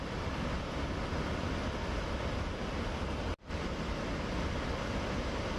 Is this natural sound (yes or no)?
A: yes